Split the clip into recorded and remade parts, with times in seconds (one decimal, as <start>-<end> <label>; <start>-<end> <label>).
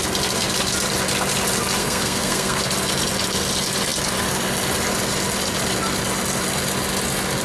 0.0-1.8 recorded; 1.8-2.6 remade; 2.6-7.4 recorded